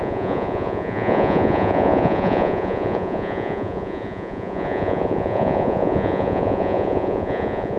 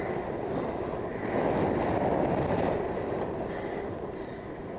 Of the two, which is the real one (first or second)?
second